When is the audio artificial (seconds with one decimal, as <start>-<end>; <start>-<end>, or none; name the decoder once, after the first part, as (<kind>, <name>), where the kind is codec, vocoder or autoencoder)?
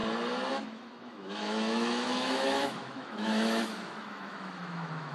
0.5-5.1 (autoencoder, DAC-VAE)